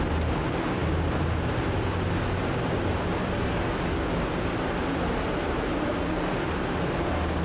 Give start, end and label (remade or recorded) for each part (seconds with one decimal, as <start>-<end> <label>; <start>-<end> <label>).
0.0-7.4 recorded